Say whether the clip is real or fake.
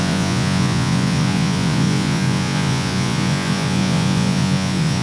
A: fake